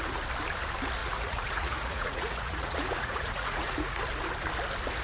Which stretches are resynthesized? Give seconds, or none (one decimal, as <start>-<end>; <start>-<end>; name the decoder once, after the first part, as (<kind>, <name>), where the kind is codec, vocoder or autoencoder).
1.0-4.0 (vocoder, Vocos)